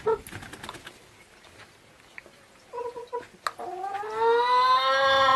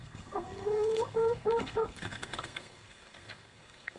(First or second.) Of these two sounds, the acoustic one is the first